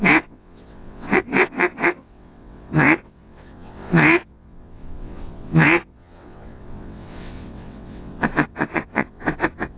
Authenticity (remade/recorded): remade